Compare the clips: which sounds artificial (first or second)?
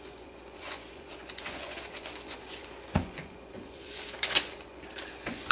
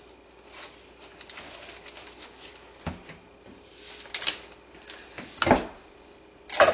first